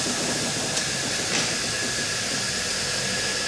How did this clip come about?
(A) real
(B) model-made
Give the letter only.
A